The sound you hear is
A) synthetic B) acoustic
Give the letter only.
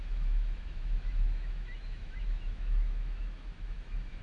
A